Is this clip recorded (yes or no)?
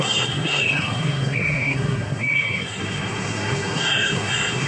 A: no